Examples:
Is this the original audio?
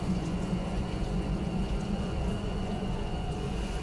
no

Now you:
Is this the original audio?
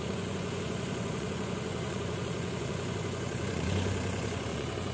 no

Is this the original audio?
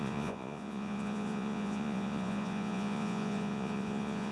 no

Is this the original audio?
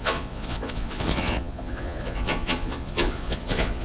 no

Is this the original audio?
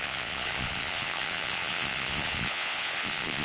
no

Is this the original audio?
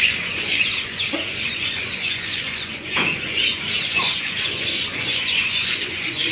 no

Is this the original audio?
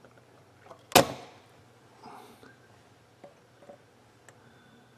yes